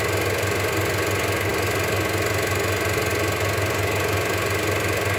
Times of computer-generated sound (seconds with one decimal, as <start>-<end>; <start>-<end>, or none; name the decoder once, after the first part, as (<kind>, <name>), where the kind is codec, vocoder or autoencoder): none

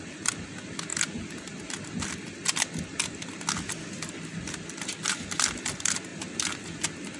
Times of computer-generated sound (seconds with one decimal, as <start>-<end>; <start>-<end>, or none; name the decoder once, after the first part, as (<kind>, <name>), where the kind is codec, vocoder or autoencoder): none

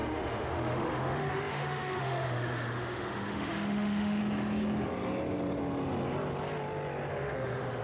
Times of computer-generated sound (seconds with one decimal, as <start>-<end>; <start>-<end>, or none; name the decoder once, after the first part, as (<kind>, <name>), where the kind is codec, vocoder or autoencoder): 0.0-4.2 (autoencoder, DAC-VAE); 7.1-7.8

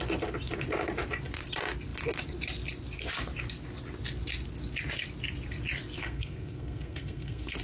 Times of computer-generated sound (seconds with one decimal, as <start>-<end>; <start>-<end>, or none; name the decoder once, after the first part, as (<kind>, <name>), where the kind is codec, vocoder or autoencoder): 6.0-7.6 (codec, SNAC)

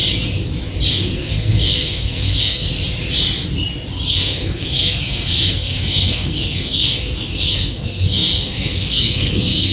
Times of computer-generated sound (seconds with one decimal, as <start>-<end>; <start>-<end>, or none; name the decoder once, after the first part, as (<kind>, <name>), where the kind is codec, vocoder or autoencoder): 0.9-2.7 (codec, SNAC); 4.1-9.7

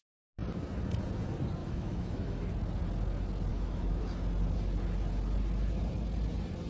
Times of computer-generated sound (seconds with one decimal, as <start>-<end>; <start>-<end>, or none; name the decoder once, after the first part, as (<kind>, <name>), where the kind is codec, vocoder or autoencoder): 1.6-2.5 (autoencoder, DAC-VAE); 3.5-4.0